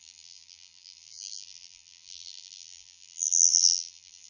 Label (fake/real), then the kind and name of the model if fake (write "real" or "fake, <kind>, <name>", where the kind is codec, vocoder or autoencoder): fake, vocoder, BigVGAN v2